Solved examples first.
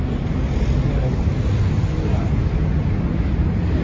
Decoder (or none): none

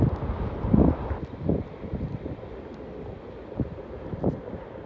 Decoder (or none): none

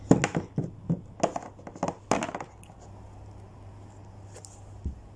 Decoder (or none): none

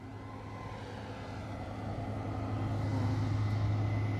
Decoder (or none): none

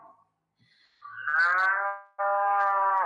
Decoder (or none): none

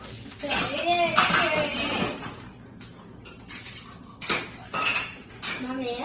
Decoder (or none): none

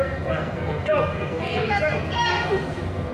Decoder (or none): codec, SNAC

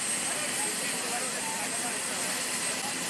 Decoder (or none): none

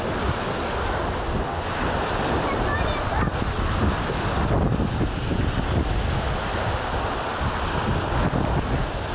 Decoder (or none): none